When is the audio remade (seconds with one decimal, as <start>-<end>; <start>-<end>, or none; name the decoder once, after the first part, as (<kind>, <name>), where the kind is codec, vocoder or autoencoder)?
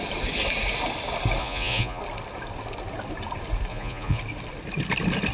1.4-2.0 (vocoder, Vocos); 3.7-4.2